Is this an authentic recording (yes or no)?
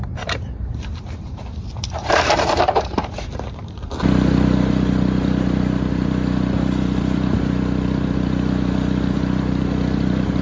no